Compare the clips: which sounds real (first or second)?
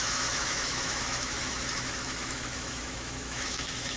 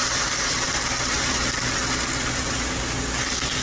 second